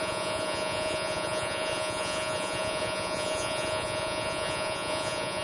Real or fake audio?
fake